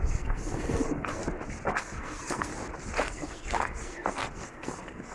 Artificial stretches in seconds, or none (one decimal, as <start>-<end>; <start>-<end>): 0.0-1.2; 1.8-2.5; 3.0-5.1